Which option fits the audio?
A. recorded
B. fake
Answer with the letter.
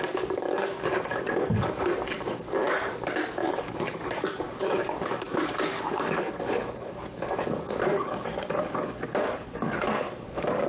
B